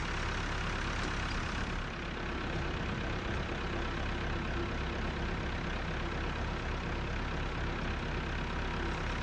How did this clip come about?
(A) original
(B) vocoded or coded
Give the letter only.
A